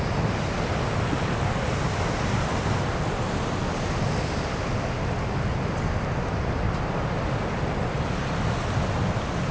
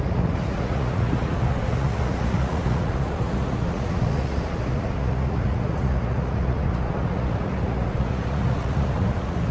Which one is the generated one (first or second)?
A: second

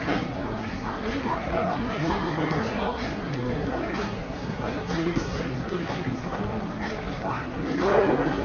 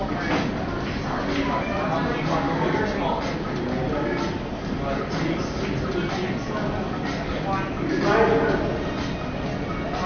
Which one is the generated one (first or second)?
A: first